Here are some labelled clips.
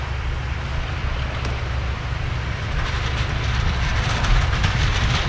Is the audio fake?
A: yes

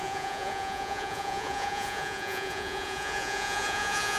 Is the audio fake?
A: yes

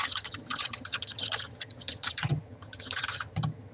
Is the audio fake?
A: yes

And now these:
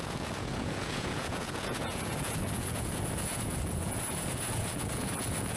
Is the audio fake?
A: yes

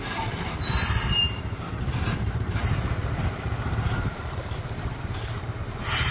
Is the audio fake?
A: yes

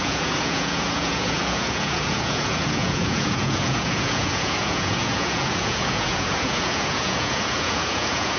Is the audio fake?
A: yes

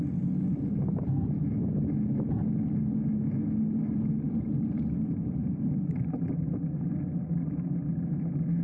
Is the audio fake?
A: no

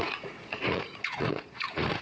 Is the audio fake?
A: yes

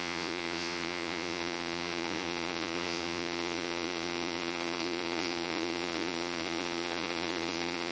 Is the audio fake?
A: yes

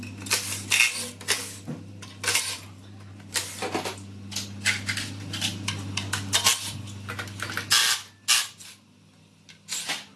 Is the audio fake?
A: no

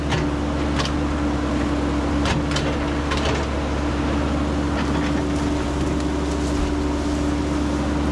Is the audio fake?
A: no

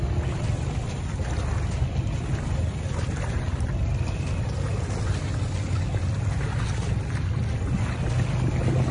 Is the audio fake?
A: no